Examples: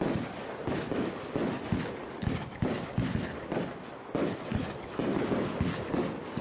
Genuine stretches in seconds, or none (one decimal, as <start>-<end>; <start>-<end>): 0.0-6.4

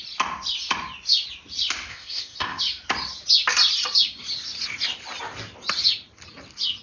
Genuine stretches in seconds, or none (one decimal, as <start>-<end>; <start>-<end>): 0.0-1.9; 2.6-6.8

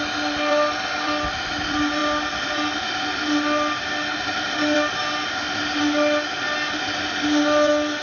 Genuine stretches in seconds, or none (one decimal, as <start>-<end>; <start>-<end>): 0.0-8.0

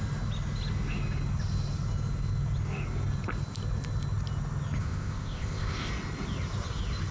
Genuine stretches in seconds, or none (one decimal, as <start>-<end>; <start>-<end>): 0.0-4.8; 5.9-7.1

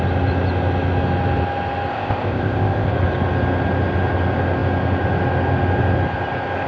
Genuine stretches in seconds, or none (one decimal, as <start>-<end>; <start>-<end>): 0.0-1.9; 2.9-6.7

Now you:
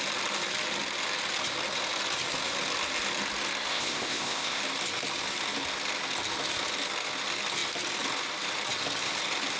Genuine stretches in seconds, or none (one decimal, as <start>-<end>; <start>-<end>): 0.0-3.7; 4.6-9.6

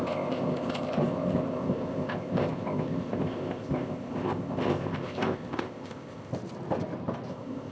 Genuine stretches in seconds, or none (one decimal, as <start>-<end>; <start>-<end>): 6.3-7.3

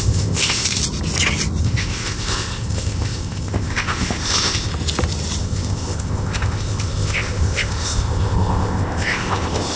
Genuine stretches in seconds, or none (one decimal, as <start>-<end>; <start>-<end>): 0.8-1.6; 4.7-5.4